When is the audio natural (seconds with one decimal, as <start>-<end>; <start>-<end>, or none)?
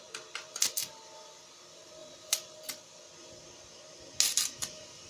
0.0-2.0; 2.8-5.1